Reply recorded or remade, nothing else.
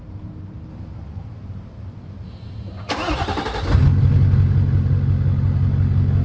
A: recorded